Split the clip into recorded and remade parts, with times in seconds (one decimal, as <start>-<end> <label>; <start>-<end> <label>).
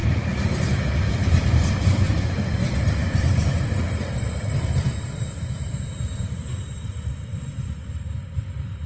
0.0-2.4 remade; 2.4-3.0 recorded; 3.0-7.7 remade; 7.7-8.9 recorded